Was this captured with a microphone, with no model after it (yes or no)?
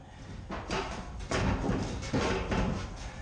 yes